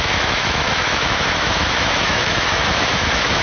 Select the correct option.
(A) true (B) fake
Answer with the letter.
B